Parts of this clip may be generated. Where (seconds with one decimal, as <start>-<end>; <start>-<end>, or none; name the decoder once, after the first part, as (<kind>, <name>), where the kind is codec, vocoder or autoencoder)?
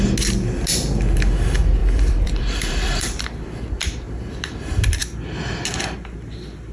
1.8-3.4 (vocoder, BigVGAN v2)